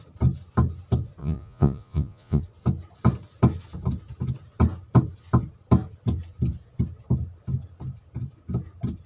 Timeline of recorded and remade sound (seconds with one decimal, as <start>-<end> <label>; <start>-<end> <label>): 0.0-1.2 recorded; 1.2-2.4 remade; 2.4-9.1 recorded